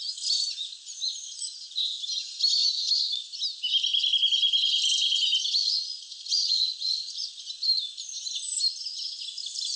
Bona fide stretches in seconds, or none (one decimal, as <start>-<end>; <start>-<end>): 0.0-5.6; 7.4-9.8